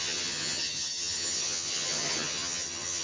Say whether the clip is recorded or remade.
remade